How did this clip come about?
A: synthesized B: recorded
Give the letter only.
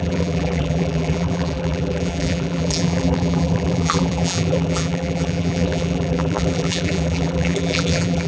A